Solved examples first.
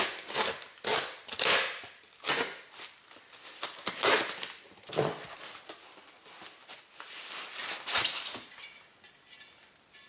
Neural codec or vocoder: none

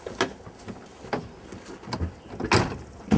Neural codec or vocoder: none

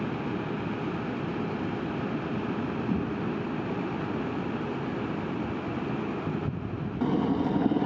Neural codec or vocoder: none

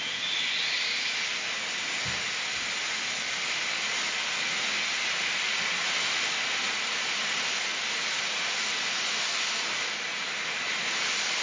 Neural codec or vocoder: none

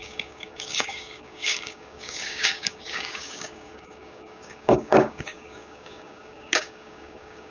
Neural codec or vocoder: codec, DAC